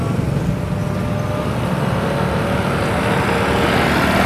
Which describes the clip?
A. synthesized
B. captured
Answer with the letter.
B